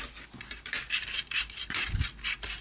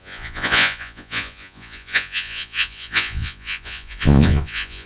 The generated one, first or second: second